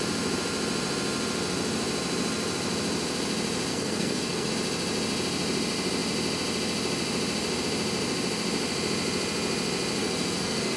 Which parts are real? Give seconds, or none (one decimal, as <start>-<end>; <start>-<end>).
0.0-3.7; 4.5-10.0